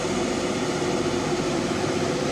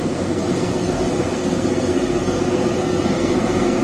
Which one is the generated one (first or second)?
second